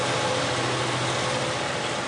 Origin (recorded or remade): recorded